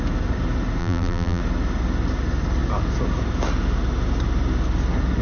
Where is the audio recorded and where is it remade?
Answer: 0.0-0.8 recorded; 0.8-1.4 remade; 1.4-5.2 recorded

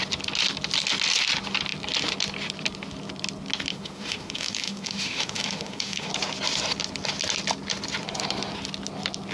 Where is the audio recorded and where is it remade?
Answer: 0.0-3.7 recorded; 3.7-6.1 remade; 6.1-9.3 recorded

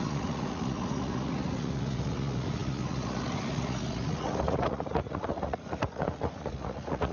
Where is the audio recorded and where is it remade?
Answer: 0.0-7.1 remade

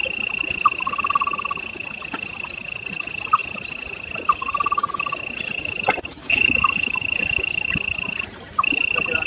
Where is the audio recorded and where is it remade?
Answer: 0.0-6.2 recorded; 6.2-7.7 remade; 7.7-9.3 recorded

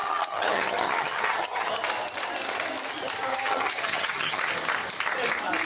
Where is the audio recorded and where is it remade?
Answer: 0.0-1.7 remade; 1.7-3.3 recorded; 3.3-4.5 remade; 4.5-5.6 recorded

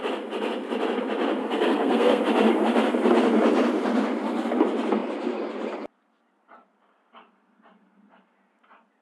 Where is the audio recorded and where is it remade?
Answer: 0.0-1.4 recorded; 1.4-2.2 remade; 2.2-9.0 recorded

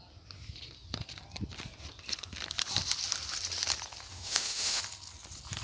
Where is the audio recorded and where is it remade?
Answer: 0.0-4.1 recorded; 4.1-4.8 remade; 4.8-5.6 recorded